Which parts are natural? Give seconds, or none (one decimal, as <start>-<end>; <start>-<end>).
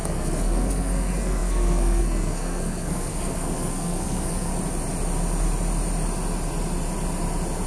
4.5-7.7